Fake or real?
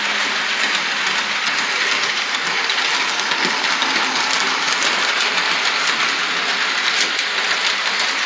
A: real